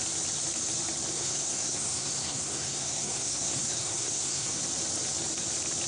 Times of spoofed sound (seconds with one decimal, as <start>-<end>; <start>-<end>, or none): 1.1-4.6